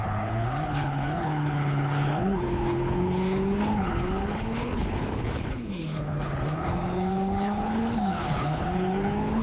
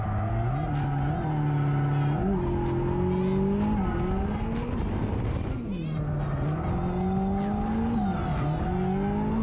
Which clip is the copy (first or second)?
first